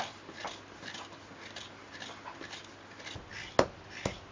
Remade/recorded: recorded